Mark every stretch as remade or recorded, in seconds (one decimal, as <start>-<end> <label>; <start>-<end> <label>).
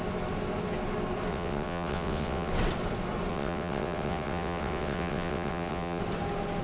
0.0-1.3 recorded; 1.3-2.5 remade; 2.5-3.3 recorded; 3.3-6.0 remade; 6.0-6.6 recorded